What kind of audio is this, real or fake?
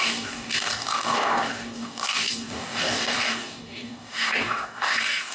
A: fake